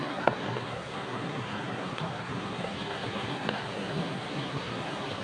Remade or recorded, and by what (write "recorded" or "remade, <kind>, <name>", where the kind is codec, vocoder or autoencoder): remade, codec, SNAC